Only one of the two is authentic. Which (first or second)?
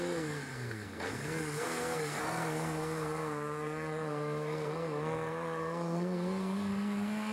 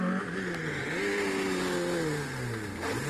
second